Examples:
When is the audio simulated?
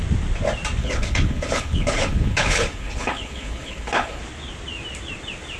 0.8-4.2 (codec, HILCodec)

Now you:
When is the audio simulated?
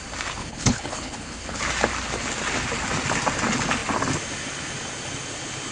0.4-1.6 (codec, HILCodec)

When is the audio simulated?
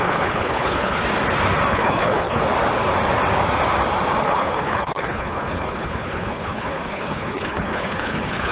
0.0-1.0 (codec, HILCodec); 1.7-2.4; 4.2-8.5